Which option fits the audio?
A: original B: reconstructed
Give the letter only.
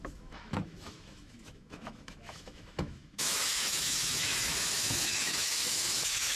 B